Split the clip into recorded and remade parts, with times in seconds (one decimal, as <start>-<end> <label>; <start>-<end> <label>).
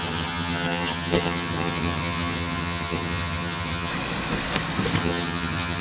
0.0-3.9 remade; 3.9-5.0 recorded; 5.0-5.8 remade